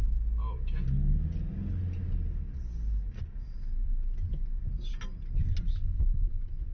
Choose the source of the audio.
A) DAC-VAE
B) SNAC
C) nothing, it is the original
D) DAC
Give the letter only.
C